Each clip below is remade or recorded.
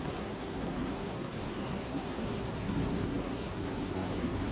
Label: remade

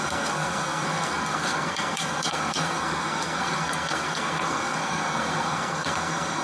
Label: remade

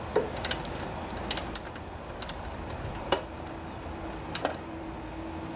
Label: recorded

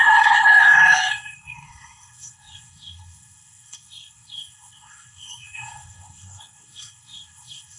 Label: remade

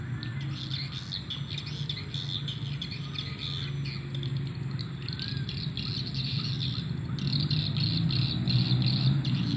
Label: recorded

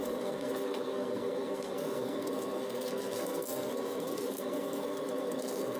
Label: remade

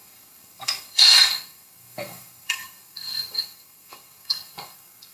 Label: remade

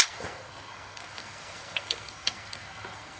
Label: remade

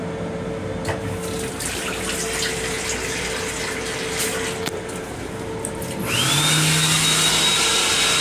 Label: recorded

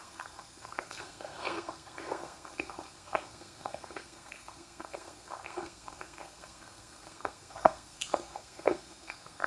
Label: remade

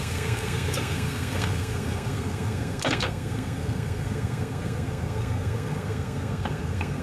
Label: remade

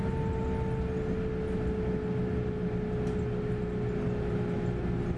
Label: recorded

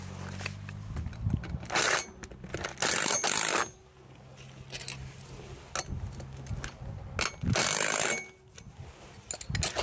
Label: recorded